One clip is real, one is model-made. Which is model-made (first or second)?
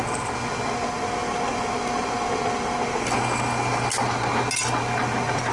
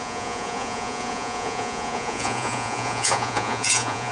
second